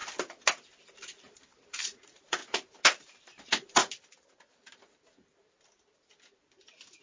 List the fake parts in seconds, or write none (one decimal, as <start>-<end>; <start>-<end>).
0.9-2.4; 3.4-3.8